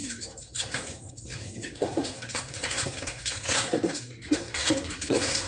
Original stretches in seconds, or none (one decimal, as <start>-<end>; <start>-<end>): none